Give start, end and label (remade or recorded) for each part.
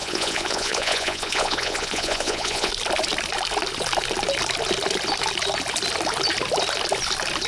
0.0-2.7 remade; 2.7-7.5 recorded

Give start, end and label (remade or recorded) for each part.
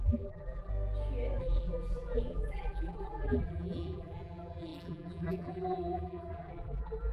0.0-0.7 remade; 0.7-1.4 recorded; 1.4-7.1 remade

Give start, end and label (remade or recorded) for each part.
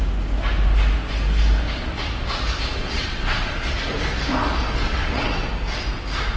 0.0-2.8 recorded; 2.8-3.5 remade; 3.5-4.8 recorded; 4.8-5.5 remade; 5.5-6.4 recorded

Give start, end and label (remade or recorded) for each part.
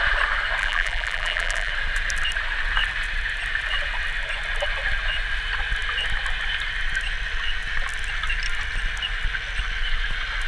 0.0-0.6 recorded; 0.6-1.7 remade; 1.7-10.5 recorded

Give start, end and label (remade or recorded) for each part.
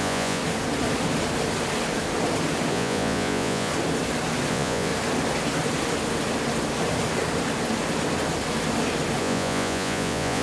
0.0-0.4 remade; 0.4-2.7 recorded; 2.7-3.7 remade; 3.7-4.5 recorded; 4.5-4.9 remade; 4.9-9.2 recorded; 9.2-10.4 remade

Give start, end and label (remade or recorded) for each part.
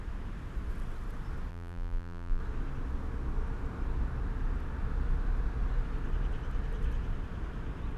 0.0-1.5 recorded; 1.5-2.4 remade; 2.4-8.0 recorded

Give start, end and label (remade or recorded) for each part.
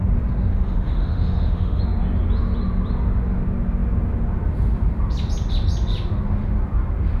0.0-0.5 recorded; 0.5-1.8 remade; 1.8-7.2 recorded